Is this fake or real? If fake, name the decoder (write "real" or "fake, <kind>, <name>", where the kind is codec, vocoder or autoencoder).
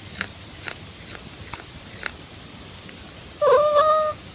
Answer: real